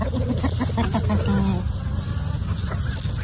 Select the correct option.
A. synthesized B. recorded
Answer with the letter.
B